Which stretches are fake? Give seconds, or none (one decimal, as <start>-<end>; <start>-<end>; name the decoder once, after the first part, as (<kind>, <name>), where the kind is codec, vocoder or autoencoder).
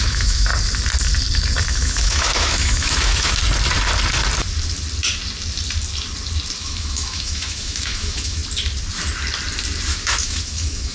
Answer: 0.0-0.5 (autoencoder, DAC-VAE); 1.6-3.4; 6.6-8.4; 9.9-10.9